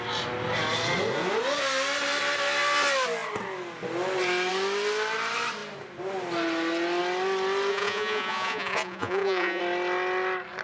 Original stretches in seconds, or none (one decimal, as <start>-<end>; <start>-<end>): 0.0-7.7; 9.6-10.6